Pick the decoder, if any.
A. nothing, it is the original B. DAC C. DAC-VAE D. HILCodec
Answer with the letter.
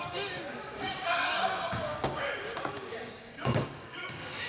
B